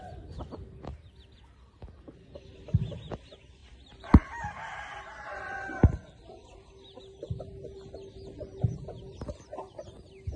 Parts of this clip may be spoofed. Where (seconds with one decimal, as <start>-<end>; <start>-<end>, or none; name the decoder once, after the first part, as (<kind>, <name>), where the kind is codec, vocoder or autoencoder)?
none